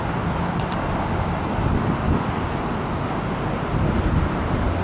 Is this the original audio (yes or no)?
yes